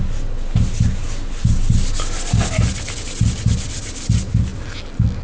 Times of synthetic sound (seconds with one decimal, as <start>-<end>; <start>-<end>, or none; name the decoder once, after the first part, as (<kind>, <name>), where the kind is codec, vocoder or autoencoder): none